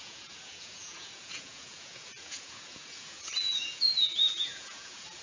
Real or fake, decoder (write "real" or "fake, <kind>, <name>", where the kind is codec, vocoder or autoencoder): fake, vocoder, Vocos